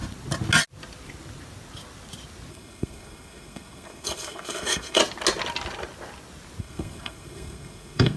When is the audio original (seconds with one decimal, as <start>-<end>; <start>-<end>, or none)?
0.0-2.5; 5.0-6.6

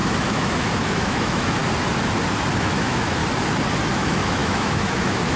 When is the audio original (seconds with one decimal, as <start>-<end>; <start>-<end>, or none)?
1.6-2.6; 3.2-3.9

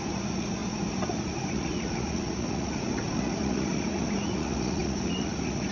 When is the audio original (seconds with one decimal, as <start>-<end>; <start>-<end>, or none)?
none

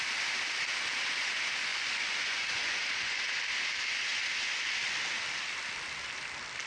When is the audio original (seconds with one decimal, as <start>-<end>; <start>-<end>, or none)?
0.0-1.7; 3.2-6.7

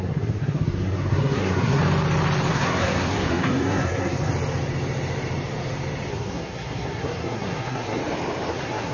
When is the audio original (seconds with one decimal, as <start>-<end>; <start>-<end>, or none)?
1.8-2.5; 4.3-6.1; 8.0-8.5

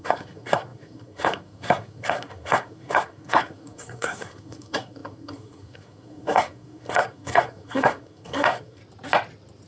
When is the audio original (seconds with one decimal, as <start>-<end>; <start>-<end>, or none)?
8.8-9.7

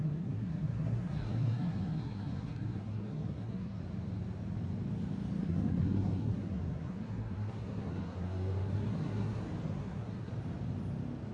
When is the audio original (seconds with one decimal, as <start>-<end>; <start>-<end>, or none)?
3.8-5.4; 9.4-9.8; 10.3-11.3

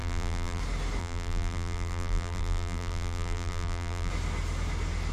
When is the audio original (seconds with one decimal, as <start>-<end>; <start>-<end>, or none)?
0.6-1.0; 4.1-5.1